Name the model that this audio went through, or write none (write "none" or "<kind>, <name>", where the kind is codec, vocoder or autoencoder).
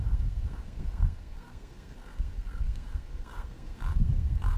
codec, SNAC